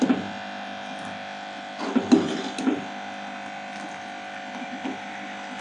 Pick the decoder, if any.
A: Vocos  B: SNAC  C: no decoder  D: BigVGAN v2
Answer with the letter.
C